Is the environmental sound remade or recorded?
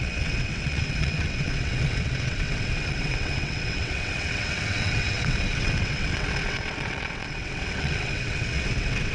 remade